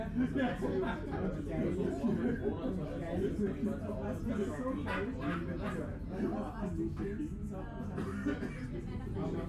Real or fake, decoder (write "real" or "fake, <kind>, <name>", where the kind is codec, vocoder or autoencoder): real